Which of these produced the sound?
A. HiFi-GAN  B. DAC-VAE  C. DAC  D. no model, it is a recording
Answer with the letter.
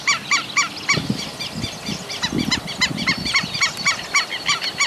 D